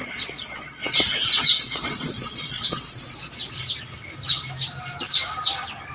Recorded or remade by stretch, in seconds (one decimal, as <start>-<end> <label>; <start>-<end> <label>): 0.0-3.5 remade; 3.5-5.9 recorded

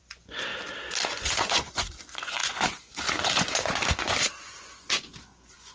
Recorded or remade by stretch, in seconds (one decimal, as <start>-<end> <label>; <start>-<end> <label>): 0.0-0.5 remade; 0.5-1.1 recorded; 1.1-5.7 remade

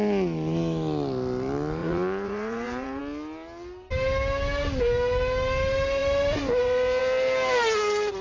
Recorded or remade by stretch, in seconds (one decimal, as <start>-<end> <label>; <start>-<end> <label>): 0.0-1.8 recorded; 1.8-3.0 remade; 3.0-8.2 recorded

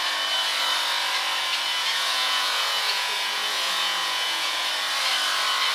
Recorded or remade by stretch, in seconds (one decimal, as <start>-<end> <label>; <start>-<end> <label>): 0.0-1.7 recorded; 1.7-4.7 remade; 4.7-5.7 recorded

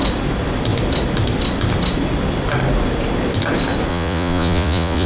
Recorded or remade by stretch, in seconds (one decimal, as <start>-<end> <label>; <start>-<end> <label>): 0.0-3.9 recorded; 3.9-5.1 remade